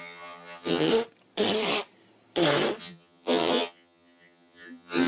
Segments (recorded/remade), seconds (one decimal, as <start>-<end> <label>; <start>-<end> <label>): 0.0-0.9 remade; 0.9-2.8 recorded; 2.8-5.1 remade